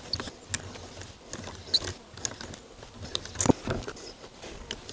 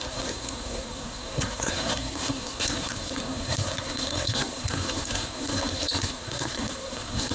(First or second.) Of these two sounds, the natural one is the first